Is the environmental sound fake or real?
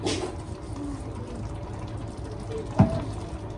real